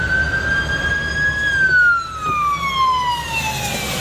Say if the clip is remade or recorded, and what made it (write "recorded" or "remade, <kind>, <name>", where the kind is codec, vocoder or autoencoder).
recorded